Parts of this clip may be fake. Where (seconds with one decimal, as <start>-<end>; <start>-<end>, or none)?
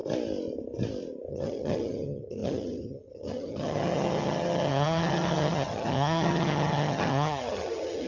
1.3-8.1